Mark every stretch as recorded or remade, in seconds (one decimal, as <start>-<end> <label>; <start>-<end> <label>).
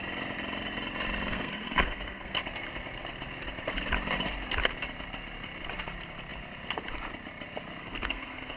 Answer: 0.0-1.3 recorded; 1.3-2.4 remade; 2.4-7.8 recorded; 7.8-8.6 remade